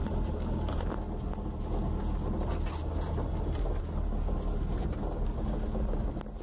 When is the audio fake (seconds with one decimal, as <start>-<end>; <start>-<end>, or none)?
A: none